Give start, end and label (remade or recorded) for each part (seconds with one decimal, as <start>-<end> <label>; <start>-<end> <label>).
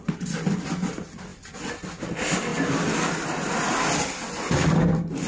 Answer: 0.0-5.3 recorded